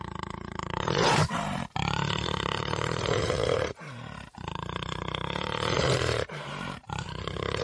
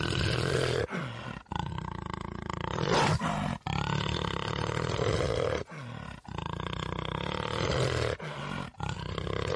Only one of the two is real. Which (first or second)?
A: second